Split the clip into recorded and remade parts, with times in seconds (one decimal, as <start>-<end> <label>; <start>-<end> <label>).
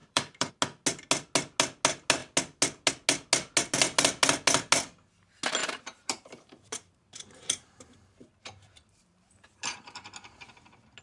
0.0-0.5 remade; 0.5-5.6 recorded; 5.6-11.0 remade